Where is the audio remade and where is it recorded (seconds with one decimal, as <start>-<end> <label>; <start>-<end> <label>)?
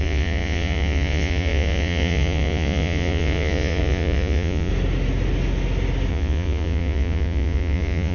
0.0-4.7 remade; 4.7-6.1 recorded; 6.1-8.1 remade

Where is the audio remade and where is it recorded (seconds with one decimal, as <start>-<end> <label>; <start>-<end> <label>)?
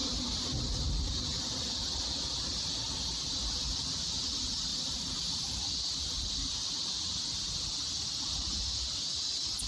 0.0-0.8 remade; 0.8-4.7 recorded; 4.7-5.6 remade; 5.6-9.7 recorded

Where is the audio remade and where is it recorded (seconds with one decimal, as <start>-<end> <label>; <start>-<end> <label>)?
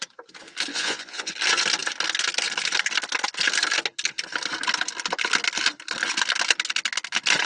0.0-0.7 recorded; 0.7-1.3 remade; 1.3-7.5 recorded